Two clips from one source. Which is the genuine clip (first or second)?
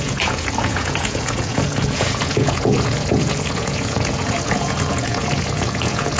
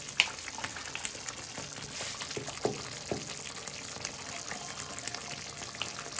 second